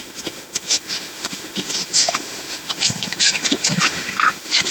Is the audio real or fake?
fake